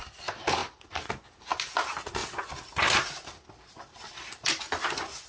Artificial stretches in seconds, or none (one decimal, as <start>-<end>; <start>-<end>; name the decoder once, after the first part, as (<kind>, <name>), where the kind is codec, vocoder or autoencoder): none